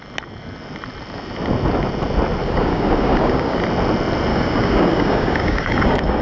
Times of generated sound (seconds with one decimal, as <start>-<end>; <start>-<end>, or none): 2.4-3.6; 4.3-6.2